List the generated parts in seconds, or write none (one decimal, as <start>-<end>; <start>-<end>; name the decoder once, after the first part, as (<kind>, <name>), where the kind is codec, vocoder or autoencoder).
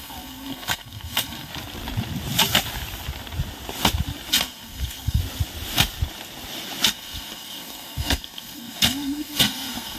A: 0.0-1.5 (codec, SNAC); 4.3-5.2; 6.9-10.0